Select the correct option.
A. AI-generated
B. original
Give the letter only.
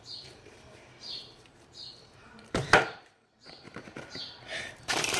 A